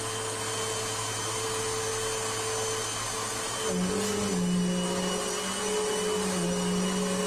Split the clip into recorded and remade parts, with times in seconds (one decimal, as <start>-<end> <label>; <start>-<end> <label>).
0.0-7.3 recorded